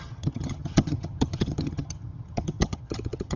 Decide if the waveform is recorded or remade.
remade